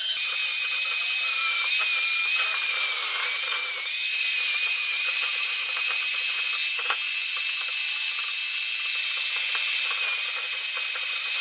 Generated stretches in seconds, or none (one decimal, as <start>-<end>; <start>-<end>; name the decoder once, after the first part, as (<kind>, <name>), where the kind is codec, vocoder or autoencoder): 0.0-0.4 (vocoder, BigVGAN v2); 2.7-6.0; 10.9-11.4